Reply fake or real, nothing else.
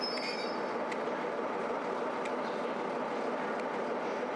fake